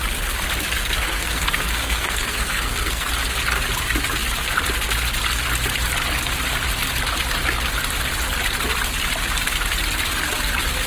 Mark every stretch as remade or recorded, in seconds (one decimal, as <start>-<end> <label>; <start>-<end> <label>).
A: 0.0-0.8 recorded; 0.8-3.1 remade; 3.1-10.9 recorded